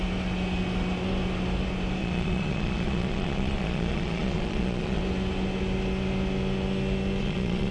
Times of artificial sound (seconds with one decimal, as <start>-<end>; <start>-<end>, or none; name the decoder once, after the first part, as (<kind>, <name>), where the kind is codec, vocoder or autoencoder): 2.0-5.0 (vocoder, Vocos); 7.2-7.7